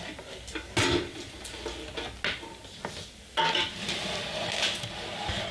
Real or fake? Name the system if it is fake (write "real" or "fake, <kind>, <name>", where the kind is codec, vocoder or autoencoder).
real